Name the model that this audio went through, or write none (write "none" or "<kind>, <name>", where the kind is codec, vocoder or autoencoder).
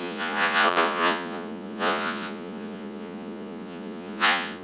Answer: vocoder, Vocos